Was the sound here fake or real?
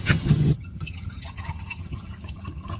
fake